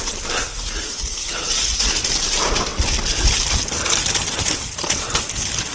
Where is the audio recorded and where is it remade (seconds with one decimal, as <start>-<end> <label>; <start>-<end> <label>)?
0.0-0.4 recorded; 0.4-1.9 remade; 1.9-5.7 recorded